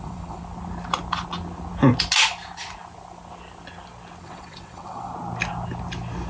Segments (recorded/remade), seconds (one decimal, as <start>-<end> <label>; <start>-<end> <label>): 0.0-0.4 remade; 0.4-4.2 recorded; 4.2-5.1 remade; 5.1-6.3 recorded